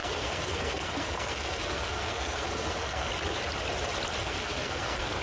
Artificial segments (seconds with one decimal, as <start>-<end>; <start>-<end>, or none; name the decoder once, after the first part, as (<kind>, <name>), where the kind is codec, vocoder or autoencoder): 0.0-3.1 (codec, SNAC); 4.2-5.2